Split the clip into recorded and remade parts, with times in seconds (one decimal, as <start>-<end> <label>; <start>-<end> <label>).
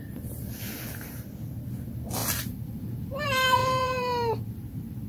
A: 0.0-5.1 remade